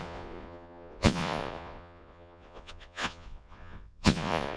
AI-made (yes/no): yes